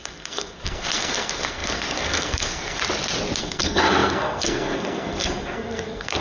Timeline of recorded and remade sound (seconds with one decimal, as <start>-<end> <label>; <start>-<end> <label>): 0.0-2.8 remade; 2.8-3.4 recorded; 3.4-6.2 remade